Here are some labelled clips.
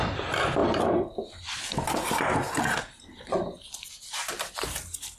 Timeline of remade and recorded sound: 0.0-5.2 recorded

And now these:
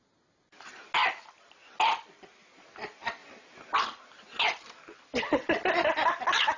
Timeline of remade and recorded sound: 0.0-6.6 recorded

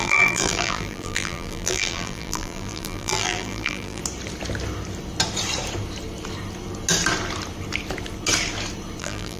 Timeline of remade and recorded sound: 0.0-4.0 remade; 4.0-9.0 recorded; 9.0-9.4 remade

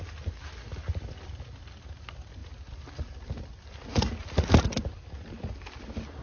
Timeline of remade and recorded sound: 0.0-2.4 recorded; 2.4-5.6 remade; 5.6-6.2 recorded

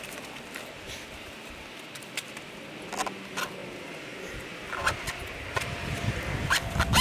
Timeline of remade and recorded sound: 0.0-7.0 recorded

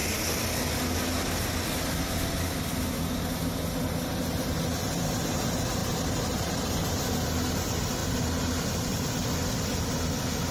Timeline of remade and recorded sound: 0.0-5.8 recorded; 5.8-6.9 remade; 6.9-10.5 recorded